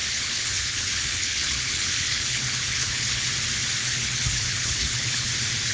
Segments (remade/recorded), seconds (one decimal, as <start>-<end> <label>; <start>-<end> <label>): 0.0-3.3 remade; 3.3-3.8 recorded; 3.8-5.3 remade; 5.3-5.7 recorded

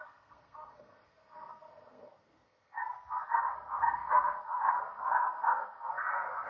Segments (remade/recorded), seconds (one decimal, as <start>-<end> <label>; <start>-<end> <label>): 0.0-6.5 remade

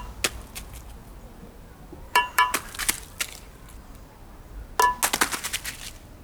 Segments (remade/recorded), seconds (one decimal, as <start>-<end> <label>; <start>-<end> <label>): 0.0-1.0 recorded; 1.0-4.7 remade; 4.7-6.2 recorded

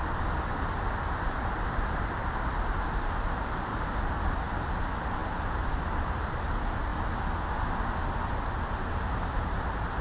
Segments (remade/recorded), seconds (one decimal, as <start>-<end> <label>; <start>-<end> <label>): 0.0-5.2 remade; 5.2-5.7 recorded; 5.7-6.9 remade; 6.9-8.9 recorded; 8.9-10.0 remade

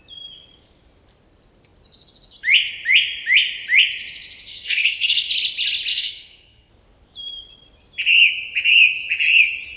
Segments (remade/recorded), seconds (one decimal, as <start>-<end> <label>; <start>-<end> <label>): 0.0-4.5 recorded; 4.5-5.3 remade; 5.3-5.9 recorded; 5.9-6.7 remade; 6.7-9.8 recorded

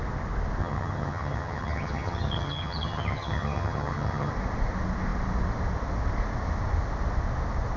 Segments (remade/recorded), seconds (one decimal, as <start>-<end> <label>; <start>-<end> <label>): 0.0-0.6 recorded; 0.6-4.3 remade; 4.3-7.8 recorded

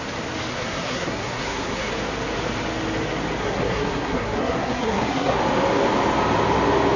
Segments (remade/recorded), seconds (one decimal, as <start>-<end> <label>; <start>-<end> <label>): 0.0-0.5 recorded; 0.5-1.9 remade; 1.9-3.4 recorded; 3.4-5.4 remade; 5.4-7.0 recorded

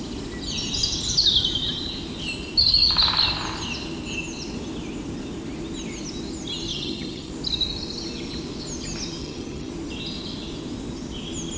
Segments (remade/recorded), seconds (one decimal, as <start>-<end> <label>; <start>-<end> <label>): 0.0-6.7 recorded; 6.7-7.3 remade; 7.3-9.2 recorded; 9.2-9.7 remade; 9.7-11.6 recorded